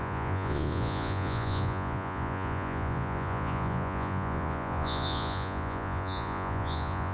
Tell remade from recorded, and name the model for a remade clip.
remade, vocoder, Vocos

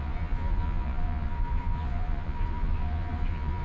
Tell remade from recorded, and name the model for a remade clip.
remade, vocoder, Vocos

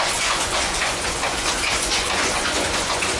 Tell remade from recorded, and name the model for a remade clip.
remade, vocoder, Vocos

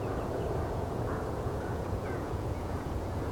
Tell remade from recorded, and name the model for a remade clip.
remade, vocoder, Vocos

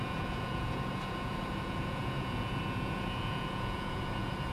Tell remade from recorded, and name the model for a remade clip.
remade, vocoder, Vocos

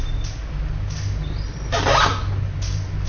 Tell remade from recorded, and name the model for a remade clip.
recorded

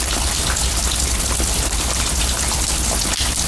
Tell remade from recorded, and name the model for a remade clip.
recorded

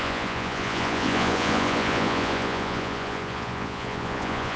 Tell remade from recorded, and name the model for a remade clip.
remade, vocoder, Vocos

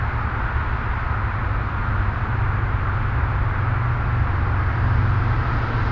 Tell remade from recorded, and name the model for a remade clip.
recorded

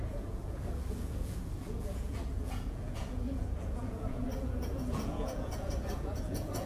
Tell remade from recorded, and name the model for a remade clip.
remade, vocoder, Vocos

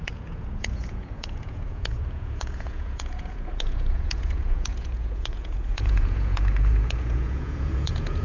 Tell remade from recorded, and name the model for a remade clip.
remade, vocoder, Vocos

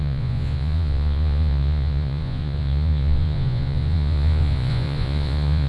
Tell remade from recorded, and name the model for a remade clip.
remade, vocoder, Vocos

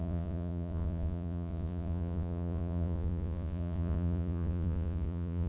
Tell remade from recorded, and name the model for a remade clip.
remade, vocoder, Vocos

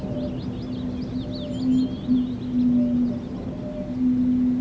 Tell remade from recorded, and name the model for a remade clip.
recorded